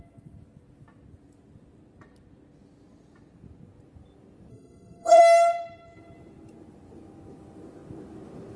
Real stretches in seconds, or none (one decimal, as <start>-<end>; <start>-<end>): 0.0-4.5; 5.2-8.6

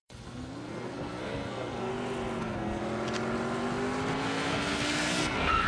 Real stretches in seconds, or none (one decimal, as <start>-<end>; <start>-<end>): 1.9-2.4; 2.8-4.2

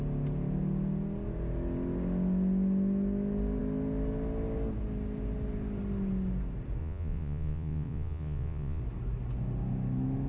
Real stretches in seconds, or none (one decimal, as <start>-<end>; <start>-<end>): 0.0-6.8; 8.8-10.3

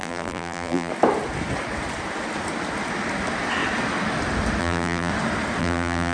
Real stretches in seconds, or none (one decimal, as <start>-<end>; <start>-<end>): 0.9-4.6; 5.1-5.6

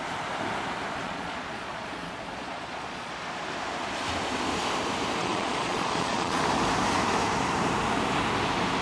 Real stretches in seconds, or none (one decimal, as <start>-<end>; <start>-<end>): 0.0-1.0; 3.1-5.2; 6.4-8.8

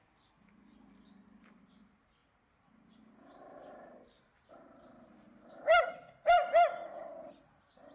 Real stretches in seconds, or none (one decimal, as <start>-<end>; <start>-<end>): 0.0-7.9

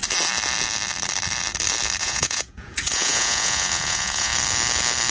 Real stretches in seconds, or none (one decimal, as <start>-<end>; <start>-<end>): 0.0-2.0; 4.3-5.1